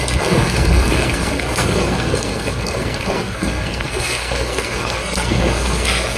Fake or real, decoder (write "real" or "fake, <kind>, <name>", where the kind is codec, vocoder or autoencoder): fake, codec, SNAC